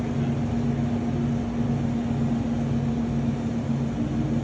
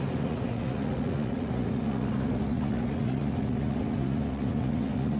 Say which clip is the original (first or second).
first